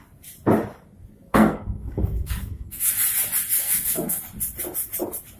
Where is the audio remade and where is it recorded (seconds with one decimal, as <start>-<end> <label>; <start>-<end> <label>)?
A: 0.0-1.3 recorded; 1.3-2.9 remade; 2.9-3.6 recorded; 3.6-4.2 remade; 4.2-5.4 recorded